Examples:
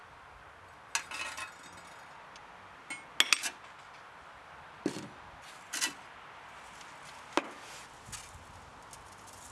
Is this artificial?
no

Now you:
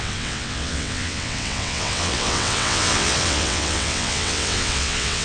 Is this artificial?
yes